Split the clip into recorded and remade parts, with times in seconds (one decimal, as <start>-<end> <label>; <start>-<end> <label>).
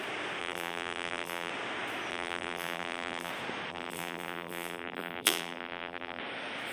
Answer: 0.0-0.4 recorded; 0.4-1.5 remade; 1.5-2.1 recorded; 2.1-3.3 remade; 3.3-3.7 recorded; 3.7-6.2 remade; 6.2-6.7 recorded